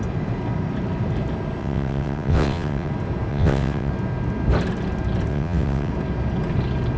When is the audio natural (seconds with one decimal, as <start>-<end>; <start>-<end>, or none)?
0.0-1.6; 2.9-3.3; 3.9-5.3; 5.9-7.0

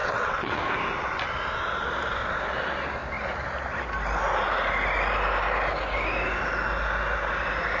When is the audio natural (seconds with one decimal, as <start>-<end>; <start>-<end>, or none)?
0.6-7.8

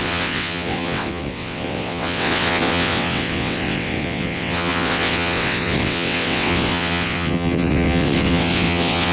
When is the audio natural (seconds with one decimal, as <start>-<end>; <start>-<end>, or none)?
none

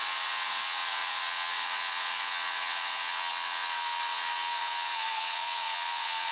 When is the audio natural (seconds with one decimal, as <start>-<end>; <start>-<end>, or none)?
none

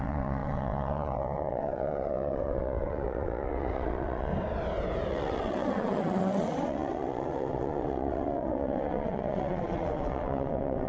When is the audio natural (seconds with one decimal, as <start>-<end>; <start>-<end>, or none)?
4.3-5.1

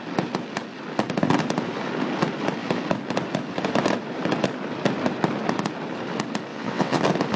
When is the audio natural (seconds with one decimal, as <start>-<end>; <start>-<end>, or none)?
0.0-6.5; 7.0-7.4

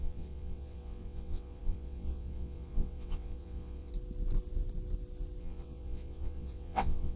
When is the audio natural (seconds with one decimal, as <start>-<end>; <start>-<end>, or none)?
3.9-5.4